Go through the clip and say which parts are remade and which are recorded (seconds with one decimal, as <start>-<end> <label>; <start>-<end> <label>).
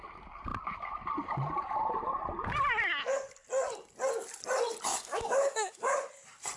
0.0-4.9 recorded; 4.9-6.1 remade; 6.1-6.6 recorded